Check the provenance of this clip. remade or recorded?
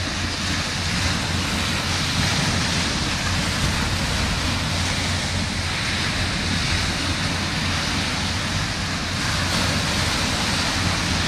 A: recorded